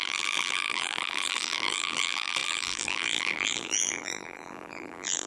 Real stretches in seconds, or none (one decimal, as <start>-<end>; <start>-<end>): none